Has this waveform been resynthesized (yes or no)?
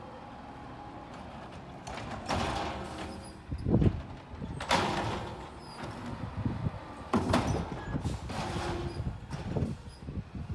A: no